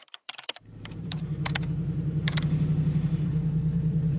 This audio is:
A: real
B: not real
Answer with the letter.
B